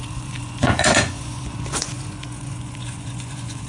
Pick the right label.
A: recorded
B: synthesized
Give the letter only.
B